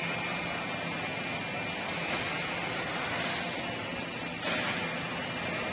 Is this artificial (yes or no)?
no